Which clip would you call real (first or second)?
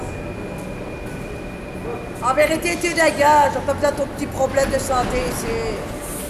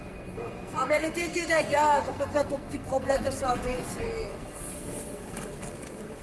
first